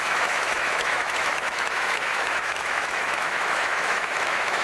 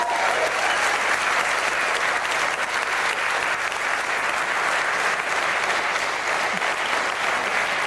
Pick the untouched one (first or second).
second